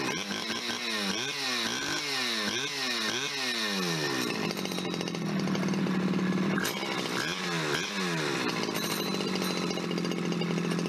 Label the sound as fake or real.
real